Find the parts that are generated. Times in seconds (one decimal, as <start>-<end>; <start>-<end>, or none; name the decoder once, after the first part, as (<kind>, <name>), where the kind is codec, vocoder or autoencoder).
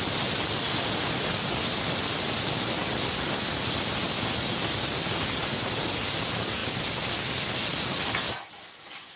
2.8-3.4 (vocoder, BigVGAN v2)